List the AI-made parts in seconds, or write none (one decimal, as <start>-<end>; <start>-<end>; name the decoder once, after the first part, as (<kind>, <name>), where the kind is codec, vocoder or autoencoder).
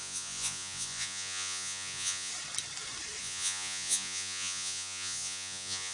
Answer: 0.0-2.3 (vocoder, Vocos); 3.2-5.9